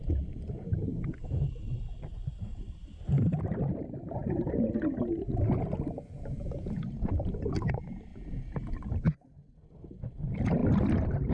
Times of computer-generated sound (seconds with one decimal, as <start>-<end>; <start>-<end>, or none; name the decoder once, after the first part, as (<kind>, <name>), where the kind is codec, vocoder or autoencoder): 0.0-2.8 (vocoder, BigVGAN v2); 3.4-4.2; 6.8-8.1; 9.6-10.6